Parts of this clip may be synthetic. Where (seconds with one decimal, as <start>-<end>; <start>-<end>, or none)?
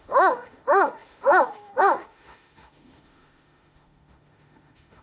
0.0-5.0